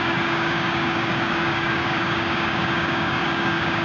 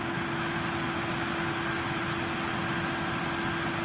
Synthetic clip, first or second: first